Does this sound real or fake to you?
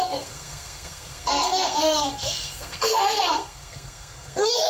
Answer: fake